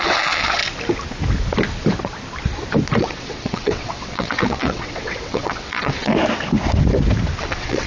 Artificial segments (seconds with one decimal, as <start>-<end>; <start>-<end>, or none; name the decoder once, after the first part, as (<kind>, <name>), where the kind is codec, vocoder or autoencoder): 0.0-0.6 (vocoder, WaveNeXt); 3.0-6.1; 7.4-7.9